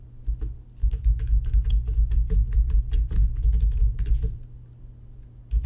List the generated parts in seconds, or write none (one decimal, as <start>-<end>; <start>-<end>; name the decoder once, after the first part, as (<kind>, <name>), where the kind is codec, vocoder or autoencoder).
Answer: 0.8-1.4 (autoencoder, DAC-VAE)